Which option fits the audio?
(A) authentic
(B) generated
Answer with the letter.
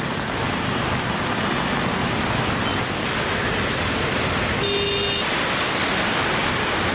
A